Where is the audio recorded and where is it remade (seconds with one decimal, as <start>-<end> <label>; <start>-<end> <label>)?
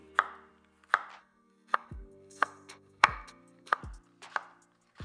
0.0-1.2 recorded; 1.2-3.8 remade; 3.8-5.0 recorded